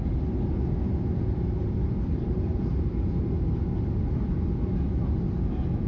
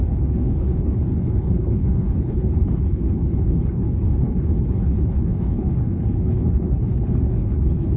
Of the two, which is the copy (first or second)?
second